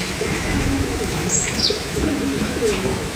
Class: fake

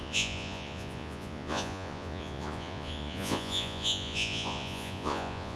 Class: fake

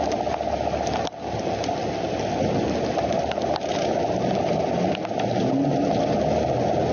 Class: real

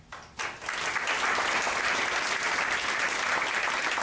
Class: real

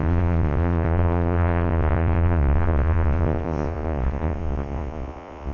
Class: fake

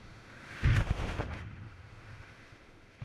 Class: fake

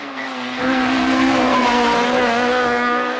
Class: fake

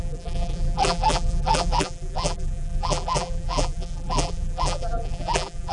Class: fake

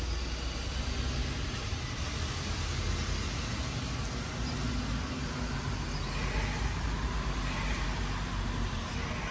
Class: real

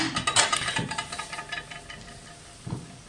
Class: real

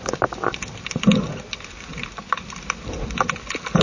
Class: real